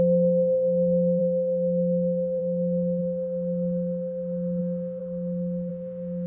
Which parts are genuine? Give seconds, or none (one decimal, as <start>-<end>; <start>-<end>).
1.2-2.4; 3.0-4.6; 5.0-5.7